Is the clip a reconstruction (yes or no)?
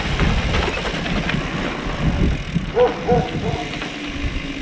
no